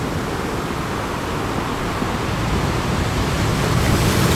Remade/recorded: recorded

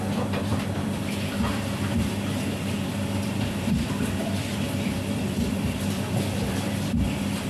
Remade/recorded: remade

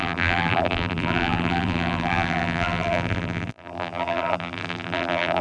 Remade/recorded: remade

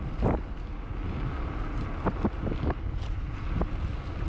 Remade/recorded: remade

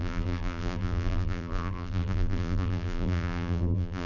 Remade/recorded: remade